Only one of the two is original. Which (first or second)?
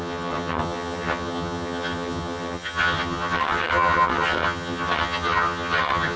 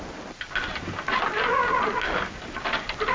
second